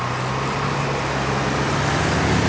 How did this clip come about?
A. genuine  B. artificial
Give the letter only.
A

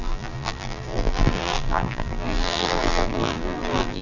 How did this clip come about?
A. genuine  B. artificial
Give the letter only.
B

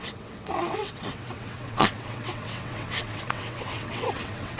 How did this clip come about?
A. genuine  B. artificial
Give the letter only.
B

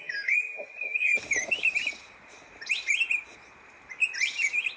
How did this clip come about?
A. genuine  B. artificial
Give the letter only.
A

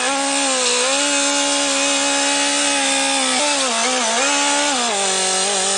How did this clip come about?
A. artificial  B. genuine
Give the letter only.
B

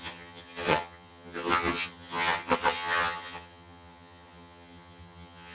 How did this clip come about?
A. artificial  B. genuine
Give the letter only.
A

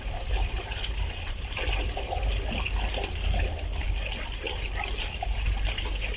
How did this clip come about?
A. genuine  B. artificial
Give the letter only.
A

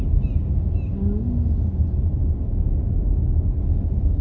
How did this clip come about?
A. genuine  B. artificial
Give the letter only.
A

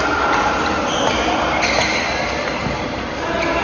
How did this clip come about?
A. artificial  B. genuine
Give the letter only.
B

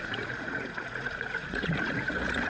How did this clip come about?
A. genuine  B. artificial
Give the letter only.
B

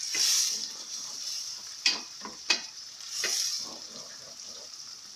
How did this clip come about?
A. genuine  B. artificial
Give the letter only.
B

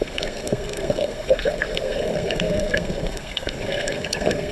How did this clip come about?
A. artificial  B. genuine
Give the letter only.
A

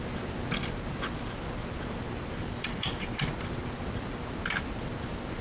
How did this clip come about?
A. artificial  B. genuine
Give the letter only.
B